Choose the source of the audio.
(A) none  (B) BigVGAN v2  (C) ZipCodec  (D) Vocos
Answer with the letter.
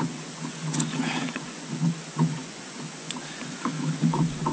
D